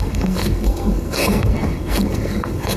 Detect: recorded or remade remade